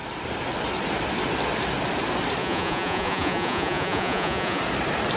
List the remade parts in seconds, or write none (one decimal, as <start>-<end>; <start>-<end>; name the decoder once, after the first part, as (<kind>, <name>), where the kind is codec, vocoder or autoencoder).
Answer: 2.4-4.6 (vocoder, Vocos)

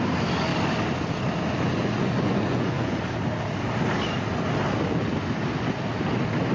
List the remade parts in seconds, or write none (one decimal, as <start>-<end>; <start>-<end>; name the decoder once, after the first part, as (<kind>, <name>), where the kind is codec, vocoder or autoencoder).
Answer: 1.8-3.0 (vocoder, Vocos)

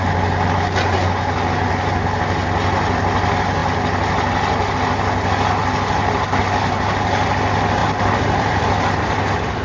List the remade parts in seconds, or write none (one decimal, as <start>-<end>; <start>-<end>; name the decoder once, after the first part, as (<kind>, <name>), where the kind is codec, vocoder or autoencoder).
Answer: 7.8-9.6 (vocoder, BigVGAN v2)

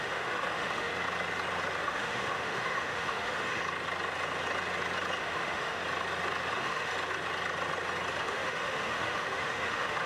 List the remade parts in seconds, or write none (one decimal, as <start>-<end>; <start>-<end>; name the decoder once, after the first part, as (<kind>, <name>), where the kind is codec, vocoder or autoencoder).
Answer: 0.0-0.9 (autoencoder, DAC-VAE); 1.8-3.6; 5.2-5.8; 6.5-6.9; 8.2-10.1

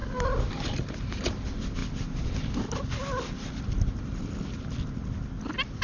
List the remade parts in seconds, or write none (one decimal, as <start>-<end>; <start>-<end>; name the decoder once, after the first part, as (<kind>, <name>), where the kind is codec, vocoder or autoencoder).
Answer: none

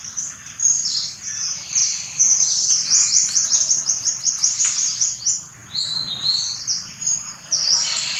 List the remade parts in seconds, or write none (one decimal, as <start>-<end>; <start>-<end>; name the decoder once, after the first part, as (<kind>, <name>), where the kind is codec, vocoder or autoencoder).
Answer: none

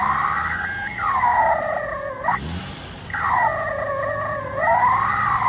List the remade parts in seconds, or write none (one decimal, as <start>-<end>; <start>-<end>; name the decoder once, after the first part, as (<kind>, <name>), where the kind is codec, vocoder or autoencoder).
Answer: none